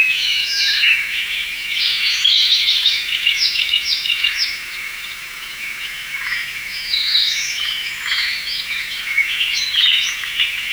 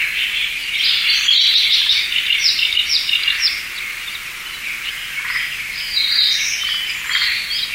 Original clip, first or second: second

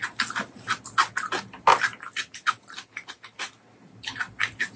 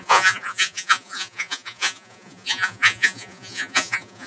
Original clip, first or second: first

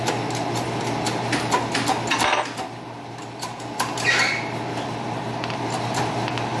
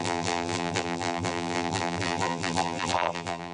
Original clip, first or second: first